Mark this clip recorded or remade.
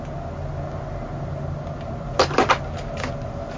recorded